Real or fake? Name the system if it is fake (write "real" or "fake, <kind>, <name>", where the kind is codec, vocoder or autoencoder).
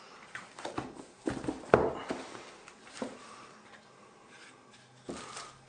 real